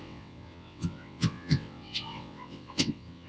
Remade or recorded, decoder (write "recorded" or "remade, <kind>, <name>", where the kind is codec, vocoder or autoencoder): remade, vocoder, WaveNeXt